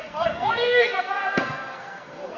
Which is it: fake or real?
fake